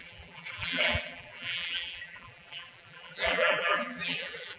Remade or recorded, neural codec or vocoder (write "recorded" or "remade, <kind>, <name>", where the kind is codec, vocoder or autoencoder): remade, vocoder, BigVGAN v2